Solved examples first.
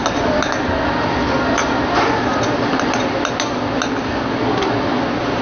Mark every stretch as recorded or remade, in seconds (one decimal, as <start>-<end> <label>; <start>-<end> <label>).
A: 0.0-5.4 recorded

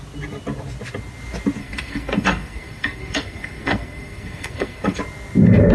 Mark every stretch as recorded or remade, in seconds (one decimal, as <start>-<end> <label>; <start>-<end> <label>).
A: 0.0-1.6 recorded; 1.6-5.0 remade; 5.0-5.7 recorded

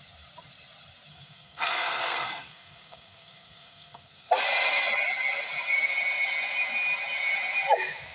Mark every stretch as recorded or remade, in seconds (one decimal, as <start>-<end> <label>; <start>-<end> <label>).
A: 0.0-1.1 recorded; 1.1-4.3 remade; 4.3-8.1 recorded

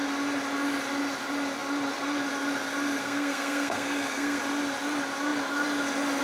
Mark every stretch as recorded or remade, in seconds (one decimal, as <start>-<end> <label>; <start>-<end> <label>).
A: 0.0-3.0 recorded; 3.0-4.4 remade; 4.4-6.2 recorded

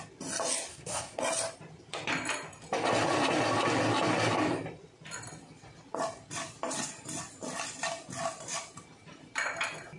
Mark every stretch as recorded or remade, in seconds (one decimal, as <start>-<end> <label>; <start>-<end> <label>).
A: 0.0-0.7 recorded; 0.7-1.2 remade; 1.2-10.0 recorded

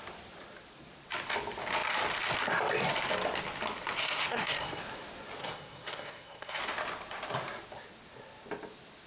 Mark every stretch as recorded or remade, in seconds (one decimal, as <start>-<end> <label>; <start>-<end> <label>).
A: 0.0-4.0 recorded; 4.0-4.8 remade; 4.8-5.4 recorded; 5.4-6.6 remade; 6.6-9.1 recorded